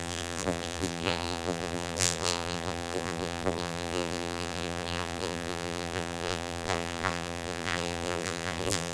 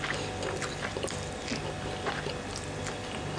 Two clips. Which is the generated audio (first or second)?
first